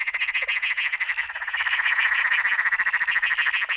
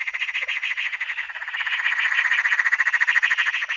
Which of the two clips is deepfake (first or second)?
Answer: second